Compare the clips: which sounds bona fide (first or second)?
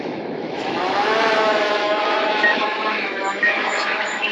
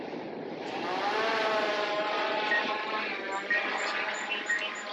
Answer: second